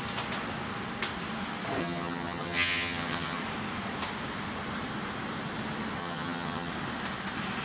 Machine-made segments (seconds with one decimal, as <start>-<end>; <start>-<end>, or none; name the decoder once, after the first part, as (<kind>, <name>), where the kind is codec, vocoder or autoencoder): 1.8-3.4 (vocoder, HiFi-GAN); 6.0-6.7